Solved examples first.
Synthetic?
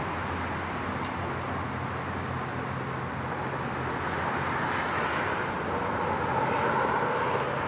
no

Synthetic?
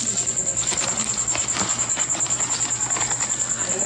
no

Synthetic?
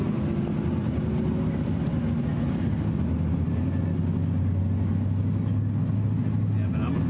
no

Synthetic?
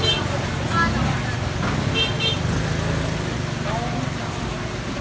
no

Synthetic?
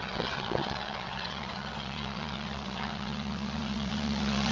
yes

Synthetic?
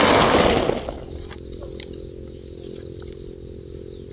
no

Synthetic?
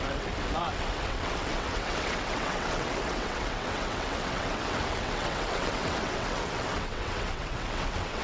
yes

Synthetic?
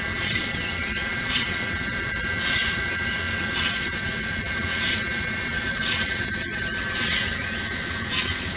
yes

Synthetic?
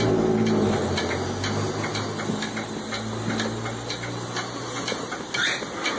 no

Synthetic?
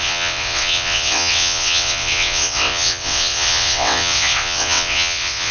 yes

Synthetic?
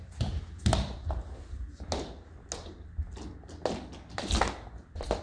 no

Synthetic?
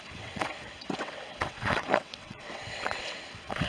yes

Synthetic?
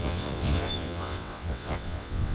yes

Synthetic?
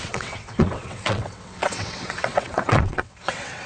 yes